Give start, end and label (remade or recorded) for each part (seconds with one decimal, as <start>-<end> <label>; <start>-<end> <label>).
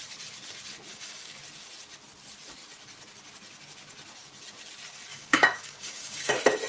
0.0-0.9 recorded; 0.9-1.4 remade; 1.4-5.1 recorded; 5.1-6.3 remade; 6.3-6.7 recorded